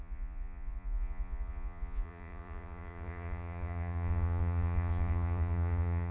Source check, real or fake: fake